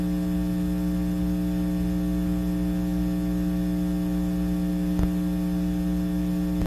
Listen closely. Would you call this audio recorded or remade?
recorded